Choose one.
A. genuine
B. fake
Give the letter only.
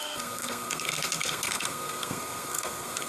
B